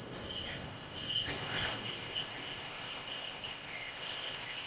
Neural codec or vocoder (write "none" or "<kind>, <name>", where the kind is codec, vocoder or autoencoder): codec, ZipCodec